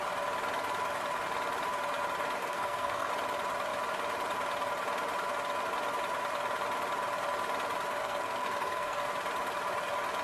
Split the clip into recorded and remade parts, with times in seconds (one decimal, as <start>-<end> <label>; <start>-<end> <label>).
0.0-2.4 recorded; 2.4-3.1 remade; 3.1-8.0 recorded; 8.0-9.0 remade; 9.0-10.2 recorded